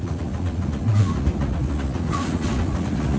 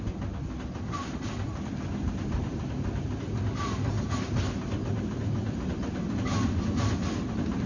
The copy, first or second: first